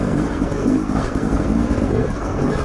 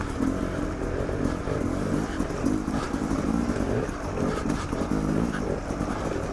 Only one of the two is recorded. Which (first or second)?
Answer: second